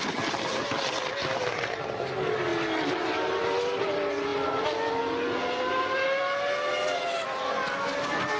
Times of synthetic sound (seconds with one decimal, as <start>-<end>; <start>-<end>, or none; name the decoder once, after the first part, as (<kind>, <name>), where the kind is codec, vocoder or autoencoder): none